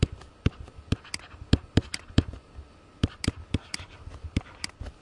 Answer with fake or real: real